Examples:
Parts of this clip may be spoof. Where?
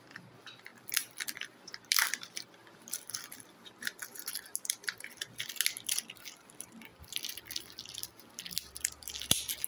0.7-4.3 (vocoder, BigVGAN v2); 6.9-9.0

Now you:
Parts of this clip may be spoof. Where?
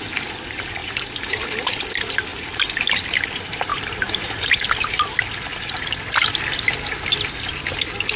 0.8-1.4 (vocoder, BigVGAN v2); 2.3-3.2; 3.7-4.6; 5.5-6.7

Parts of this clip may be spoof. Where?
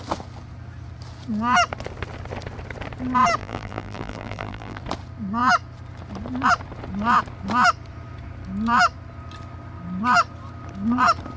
3.4-4.8 (vocoder, BigVGAN v2)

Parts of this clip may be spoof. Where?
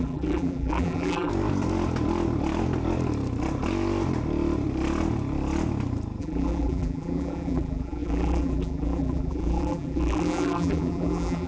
0.0-1.3 (vocoder, BigVGAN v2); 6.2-11.5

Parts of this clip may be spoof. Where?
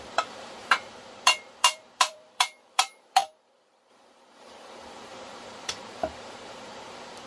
0.0-3.2 (vocoder, BigVGAN v2); 3.9-7.3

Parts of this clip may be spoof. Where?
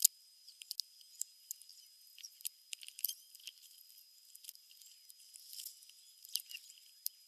2.1-4.9 (vocoder, BigVGAN v2)